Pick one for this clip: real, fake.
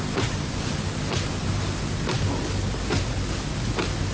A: real